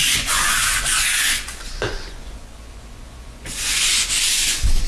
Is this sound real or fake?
fake